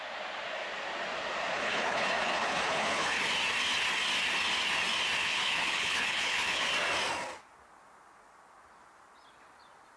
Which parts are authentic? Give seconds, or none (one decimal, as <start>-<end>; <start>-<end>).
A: 0.0-1.5; 3.2-5.2; 6.6-10.0